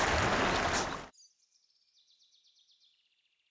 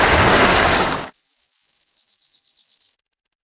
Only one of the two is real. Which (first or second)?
first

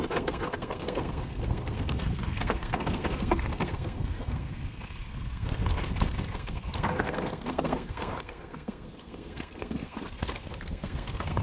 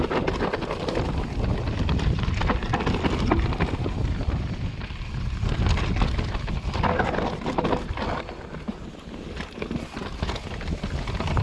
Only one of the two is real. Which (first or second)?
second